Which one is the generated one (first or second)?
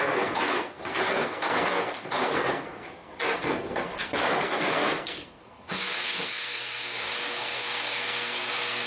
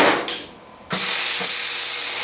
first